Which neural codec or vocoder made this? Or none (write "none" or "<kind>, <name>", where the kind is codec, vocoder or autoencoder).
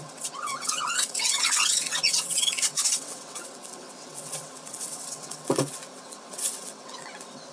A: vocoder, WaveNeXt